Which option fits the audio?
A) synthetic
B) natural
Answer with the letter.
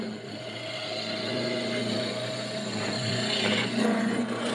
A